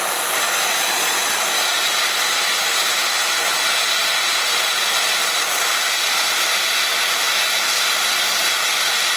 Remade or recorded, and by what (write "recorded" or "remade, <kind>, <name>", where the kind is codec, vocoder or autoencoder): recorded